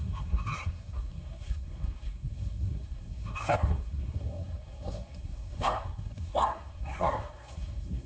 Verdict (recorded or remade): remade